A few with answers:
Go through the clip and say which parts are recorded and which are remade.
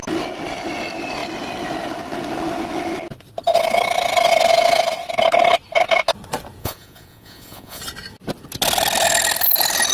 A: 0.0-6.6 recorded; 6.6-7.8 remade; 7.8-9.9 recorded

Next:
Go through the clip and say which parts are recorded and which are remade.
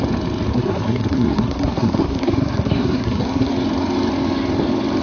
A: 0.0-0.5 recorded; 0.5-3.5 remade; 3.5-5.0 recorded